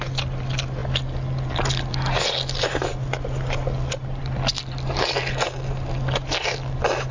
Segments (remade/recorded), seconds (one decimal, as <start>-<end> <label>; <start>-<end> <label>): 0.0-7.1 recorded